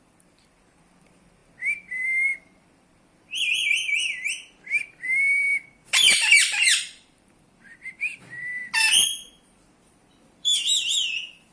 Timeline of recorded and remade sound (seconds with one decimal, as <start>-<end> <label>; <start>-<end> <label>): 0.0-8.6 remade; 8.6-9.3 recorded; 9.3-11.5 remade